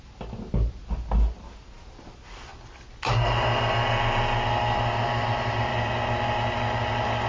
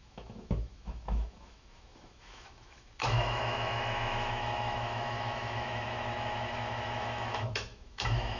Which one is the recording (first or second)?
first